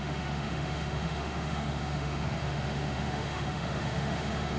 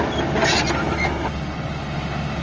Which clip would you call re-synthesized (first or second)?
first